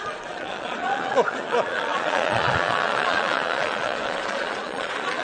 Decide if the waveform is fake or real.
fake